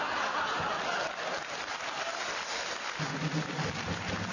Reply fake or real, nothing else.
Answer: real